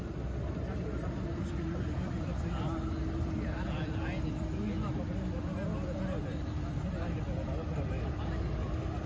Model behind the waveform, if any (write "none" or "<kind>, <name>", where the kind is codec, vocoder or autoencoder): none